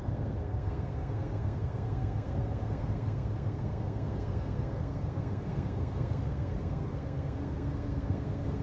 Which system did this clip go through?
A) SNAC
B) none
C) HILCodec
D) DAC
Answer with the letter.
A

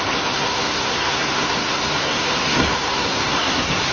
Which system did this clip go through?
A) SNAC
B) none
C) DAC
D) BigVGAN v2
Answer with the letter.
A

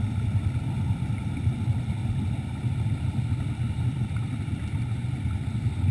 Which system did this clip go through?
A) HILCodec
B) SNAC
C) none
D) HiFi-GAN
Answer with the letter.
C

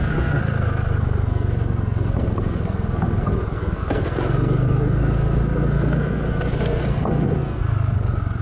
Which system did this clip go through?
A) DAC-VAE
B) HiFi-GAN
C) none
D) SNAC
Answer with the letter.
D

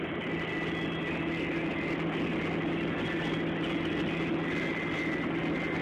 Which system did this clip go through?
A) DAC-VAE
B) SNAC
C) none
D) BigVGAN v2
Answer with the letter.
C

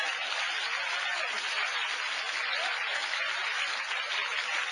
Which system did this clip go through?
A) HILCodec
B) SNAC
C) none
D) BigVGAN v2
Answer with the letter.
C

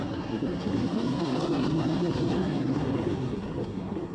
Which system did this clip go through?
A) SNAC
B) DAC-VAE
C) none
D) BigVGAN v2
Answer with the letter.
A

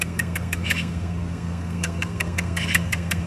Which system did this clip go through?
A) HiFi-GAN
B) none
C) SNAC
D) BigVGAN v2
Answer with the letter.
C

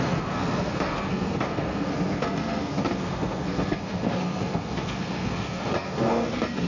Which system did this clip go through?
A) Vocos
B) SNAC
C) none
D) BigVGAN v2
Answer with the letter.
B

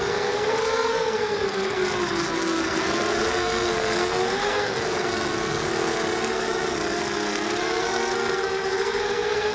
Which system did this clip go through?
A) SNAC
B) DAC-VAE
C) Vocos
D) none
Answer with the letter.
A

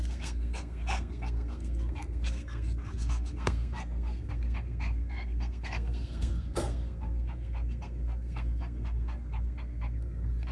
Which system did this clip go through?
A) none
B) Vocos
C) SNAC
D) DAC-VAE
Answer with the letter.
C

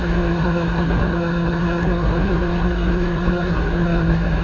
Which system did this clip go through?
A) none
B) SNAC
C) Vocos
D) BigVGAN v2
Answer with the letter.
B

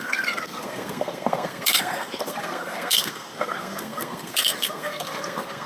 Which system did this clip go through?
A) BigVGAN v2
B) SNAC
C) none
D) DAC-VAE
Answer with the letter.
B